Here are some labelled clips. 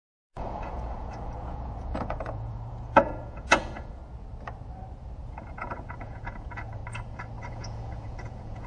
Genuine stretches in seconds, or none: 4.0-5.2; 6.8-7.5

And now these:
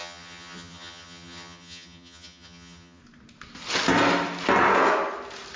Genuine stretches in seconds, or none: 3.0-5.6

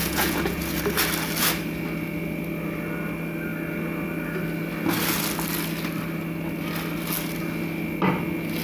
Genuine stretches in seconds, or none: 0.6-8.6